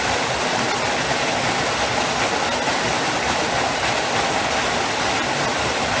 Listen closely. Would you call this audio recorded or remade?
recorded